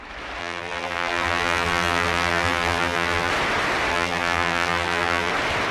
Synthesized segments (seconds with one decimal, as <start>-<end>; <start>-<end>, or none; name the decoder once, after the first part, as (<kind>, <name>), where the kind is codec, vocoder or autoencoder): 0.4-3.3 (vocoder, BigVGAN v2); 3.9-5.3